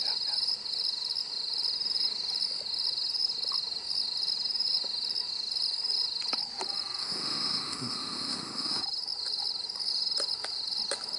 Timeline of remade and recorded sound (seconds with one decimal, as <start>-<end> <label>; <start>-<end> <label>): 0.0-7.0 recorded; 7.0-8.8 remade; 8.8-11.2 recorded

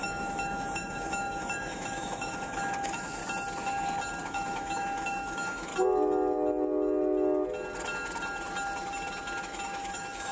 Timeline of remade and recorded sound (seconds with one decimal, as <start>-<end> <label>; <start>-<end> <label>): 0.0-3.2 remade; 3.2-4.2 recorded; 4.2-5.7 remade; 5.7-9.4 recorded; 9.4-10.3 remade